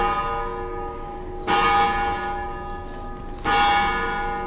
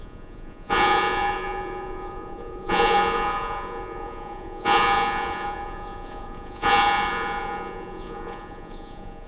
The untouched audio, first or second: first